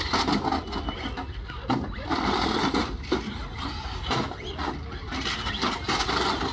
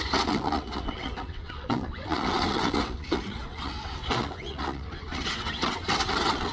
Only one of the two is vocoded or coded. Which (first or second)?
second